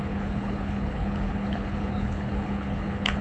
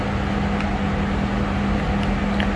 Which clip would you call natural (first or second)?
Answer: second